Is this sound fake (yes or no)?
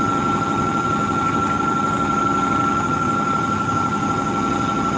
yes